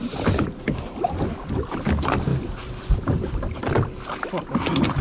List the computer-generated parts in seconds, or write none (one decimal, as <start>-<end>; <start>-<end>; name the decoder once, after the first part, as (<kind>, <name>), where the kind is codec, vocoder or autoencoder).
2.3-4.0 (vocoder, BigVGAN v2)